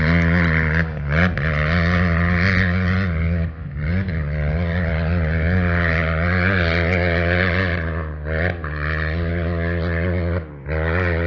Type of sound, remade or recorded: recorded